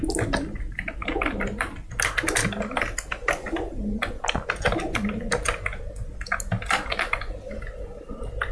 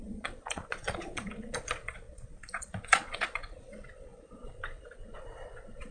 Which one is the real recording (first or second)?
first